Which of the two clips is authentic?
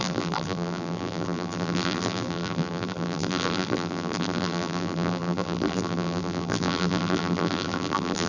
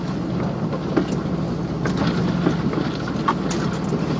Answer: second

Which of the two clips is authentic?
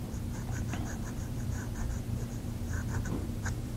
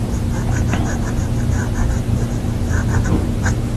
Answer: second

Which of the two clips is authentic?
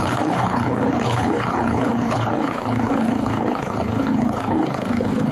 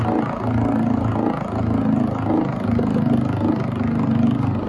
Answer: second